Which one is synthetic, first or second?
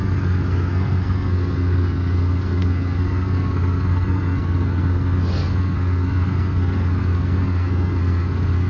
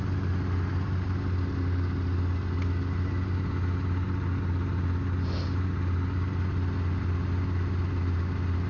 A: first